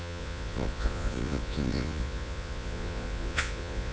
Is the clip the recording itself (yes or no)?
no